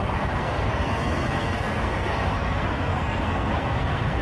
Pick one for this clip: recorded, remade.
remade